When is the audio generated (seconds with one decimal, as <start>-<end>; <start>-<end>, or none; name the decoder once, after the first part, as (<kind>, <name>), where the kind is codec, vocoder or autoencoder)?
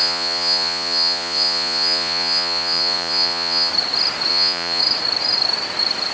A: 0.0-3.7 (vocoder, Vocos); 4.3-4.8